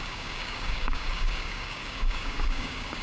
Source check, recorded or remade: remade